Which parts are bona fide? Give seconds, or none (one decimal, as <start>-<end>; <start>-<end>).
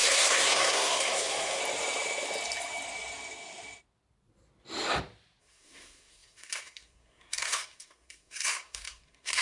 1.6-5.4